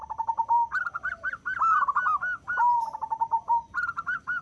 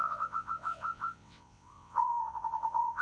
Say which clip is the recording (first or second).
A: first